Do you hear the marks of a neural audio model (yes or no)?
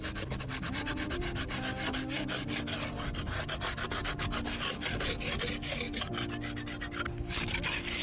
no